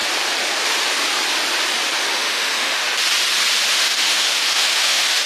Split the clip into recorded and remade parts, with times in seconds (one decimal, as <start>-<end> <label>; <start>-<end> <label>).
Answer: 0.0-2.1 recorded; 2.1-2.9 remade; 2.9-3.7 recorded; 3.7-5.3 remade